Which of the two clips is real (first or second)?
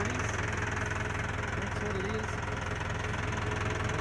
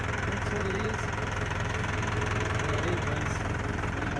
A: first